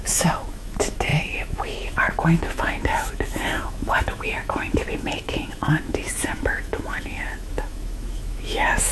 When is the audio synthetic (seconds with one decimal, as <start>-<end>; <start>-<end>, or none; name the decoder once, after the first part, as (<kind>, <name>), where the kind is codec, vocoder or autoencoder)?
0.0-8.9 (autoencoder, DAC-VAE)